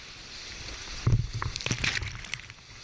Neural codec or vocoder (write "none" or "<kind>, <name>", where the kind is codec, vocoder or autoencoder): none